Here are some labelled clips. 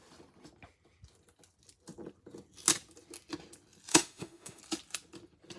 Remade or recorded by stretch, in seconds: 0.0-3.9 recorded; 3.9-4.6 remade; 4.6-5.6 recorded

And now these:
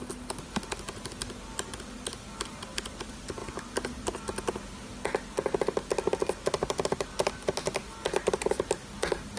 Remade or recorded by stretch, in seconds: 0.0-9.4 recorded